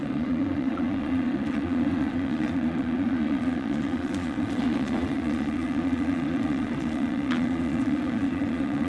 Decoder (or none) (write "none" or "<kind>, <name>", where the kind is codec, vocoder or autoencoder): vocoder, Vocos